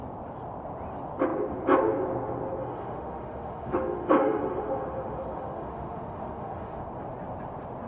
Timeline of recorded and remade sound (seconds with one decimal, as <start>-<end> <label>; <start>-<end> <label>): 0.0-2.6 recorded; 2.6-6.8 remade; 6.8-7.9 recorded

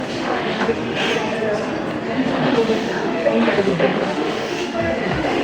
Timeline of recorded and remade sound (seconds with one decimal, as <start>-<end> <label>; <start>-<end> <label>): 0.0-1.1 remade; 1.1-2.2 recorded; 2.2-5.4 remade

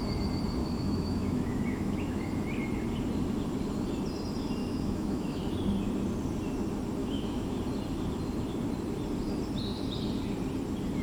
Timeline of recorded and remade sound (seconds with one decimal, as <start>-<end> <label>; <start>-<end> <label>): 0.0-0.6 recorded; 0.6-2.2 remade; 2.2-4.6 recorded; 4.6-5.4 remade; 5.4-7.0 recorded; 7.0-7.6 remade; 7.6-11.0 recorded

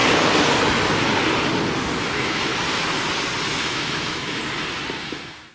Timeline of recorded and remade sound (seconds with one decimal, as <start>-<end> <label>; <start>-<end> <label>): 0.0-2.0 recorded; 2.0-2.5 remade; 2.5-3.6 recorded; 3.6-4.4 remade; 4.4-5.0 recorded; 5.0-5.5 remade